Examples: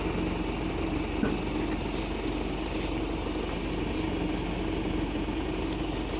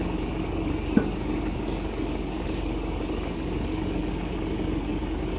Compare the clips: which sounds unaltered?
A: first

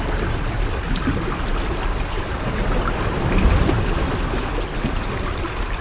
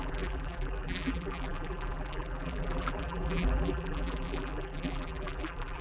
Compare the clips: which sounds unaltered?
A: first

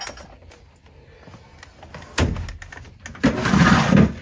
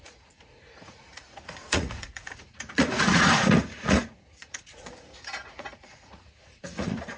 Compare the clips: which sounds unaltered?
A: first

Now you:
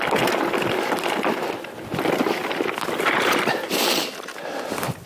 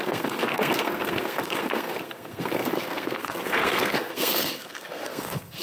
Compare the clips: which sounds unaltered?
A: first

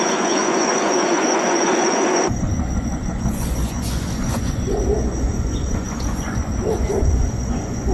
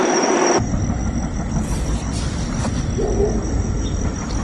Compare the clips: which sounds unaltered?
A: second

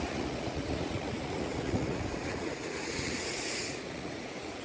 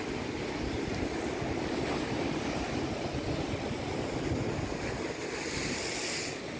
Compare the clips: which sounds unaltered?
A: second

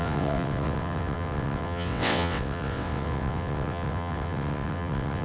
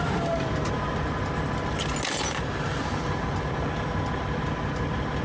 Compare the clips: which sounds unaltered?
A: second